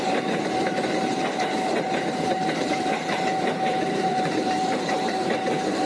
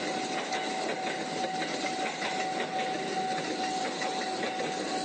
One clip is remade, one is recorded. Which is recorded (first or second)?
second